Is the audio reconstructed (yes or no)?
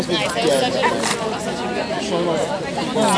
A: no